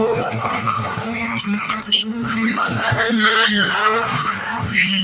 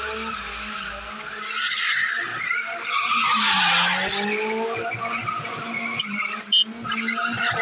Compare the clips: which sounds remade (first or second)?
first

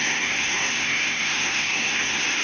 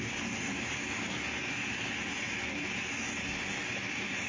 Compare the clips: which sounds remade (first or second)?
first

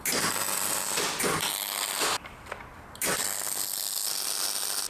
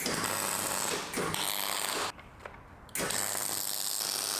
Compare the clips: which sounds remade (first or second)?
first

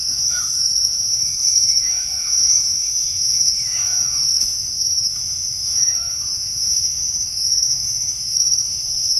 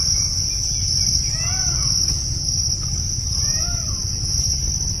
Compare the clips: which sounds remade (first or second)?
first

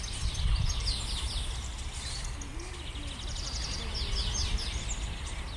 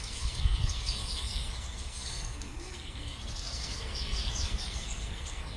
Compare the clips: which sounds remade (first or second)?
second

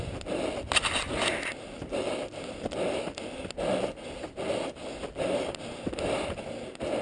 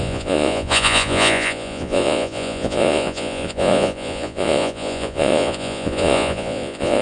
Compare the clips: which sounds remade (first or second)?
second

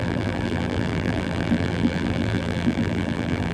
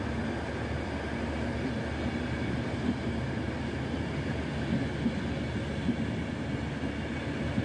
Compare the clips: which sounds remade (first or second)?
first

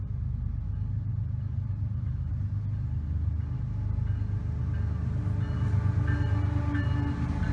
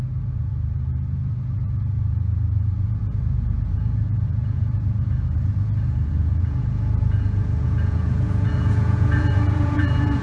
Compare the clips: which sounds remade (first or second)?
second